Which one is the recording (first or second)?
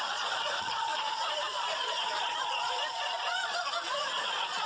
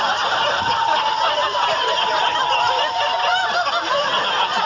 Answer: second